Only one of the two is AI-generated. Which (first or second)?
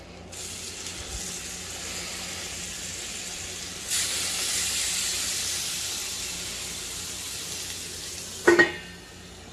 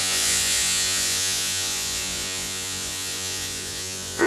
second